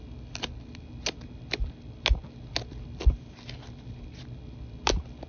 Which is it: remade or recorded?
recorded